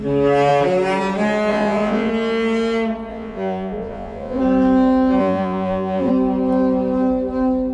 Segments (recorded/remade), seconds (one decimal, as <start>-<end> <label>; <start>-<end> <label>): 0.0-1.5 recorded; 1.5-2.1 remade; 2.1-3.1 recorded; 3.1-4.4 remade; 4.4-5.2 recorded; 5.2-6.1 remade; 6.1-7.7 recorded